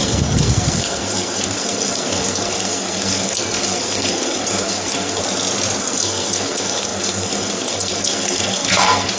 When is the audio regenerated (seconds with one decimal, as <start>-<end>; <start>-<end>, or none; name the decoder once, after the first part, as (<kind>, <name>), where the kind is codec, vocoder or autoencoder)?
0.0-5.2 (codec, SNAC); 5.8-9.2